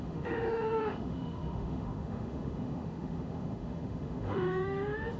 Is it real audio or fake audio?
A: fake